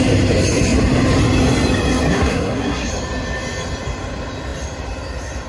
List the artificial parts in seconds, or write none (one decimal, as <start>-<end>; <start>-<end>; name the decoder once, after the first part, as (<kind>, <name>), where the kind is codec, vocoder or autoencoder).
2.1-2.9 (codec, SNAC)

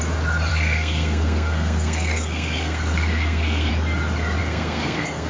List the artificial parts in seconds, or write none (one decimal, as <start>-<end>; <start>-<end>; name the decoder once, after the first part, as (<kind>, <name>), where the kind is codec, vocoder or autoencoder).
0.5-3.7 (codec, SNAC); 4.4-5.3

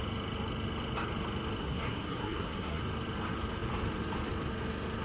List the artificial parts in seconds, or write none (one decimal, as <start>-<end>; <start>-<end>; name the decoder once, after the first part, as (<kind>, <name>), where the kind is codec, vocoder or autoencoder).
1.6-2.8 (codec, SNAC)

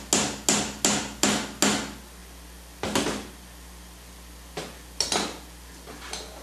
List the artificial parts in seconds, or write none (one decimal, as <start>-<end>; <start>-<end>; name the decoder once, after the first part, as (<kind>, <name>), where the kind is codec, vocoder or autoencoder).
none

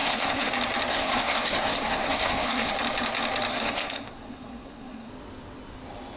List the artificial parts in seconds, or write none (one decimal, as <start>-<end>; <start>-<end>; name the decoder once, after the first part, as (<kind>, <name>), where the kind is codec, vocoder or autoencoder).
0.0-0.5 (codec, SNAC); 0.9-2.7; 3.5-5.1

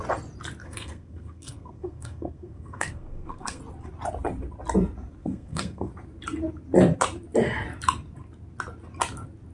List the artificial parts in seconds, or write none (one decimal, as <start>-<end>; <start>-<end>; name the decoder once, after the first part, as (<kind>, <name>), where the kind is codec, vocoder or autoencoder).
0.6-3.6 (codec, SNAC); 5.2-5.9

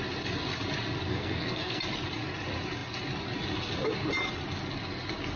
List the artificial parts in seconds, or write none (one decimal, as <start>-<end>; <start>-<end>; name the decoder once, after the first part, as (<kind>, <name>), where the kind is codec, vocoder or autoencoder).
1.1-1.8 (codec, SNAC)